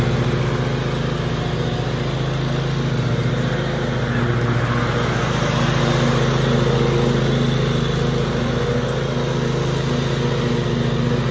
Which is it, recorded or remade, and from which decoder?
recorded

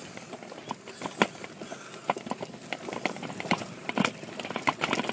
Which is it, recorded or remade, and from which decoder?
recorded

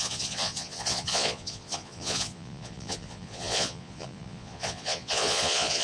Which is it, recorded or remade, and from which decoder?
remade, vocoder, Vocos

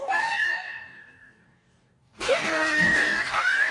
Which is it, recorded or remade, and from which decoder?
remade, codec, DAC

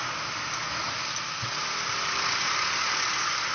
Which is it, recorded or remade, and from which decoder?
recorded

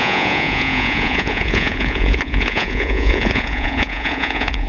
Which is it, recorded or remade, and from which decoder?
remade, vocoder, Vocos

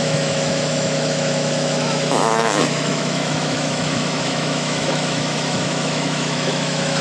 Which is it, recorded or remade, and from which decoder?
remade, autoencoder, DAC-VAE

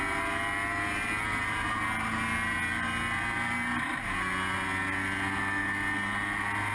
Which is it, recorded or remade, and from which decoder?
recorded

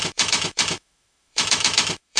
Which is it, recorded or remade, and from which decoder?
remade, autoencoder, DAC-VAE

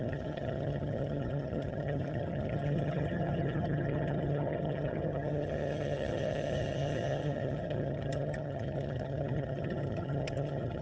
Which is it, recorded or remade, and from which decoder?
remade, vocoder, HiFi-GAN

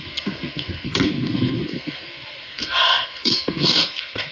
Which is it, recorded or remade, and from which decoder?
remade, codec, SNAC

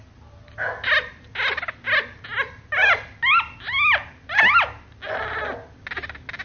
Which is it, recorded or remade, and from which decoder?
recorded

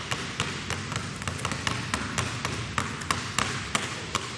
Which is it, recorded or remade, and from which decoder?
recorded